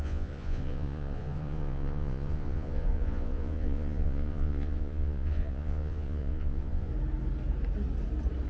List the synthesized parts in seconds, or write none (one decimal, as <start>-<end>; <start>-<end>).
0.0-6.9